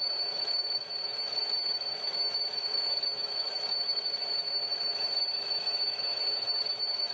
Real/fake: fake